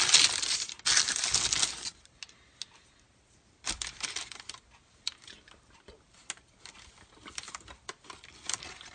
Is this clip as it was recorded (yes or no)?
yes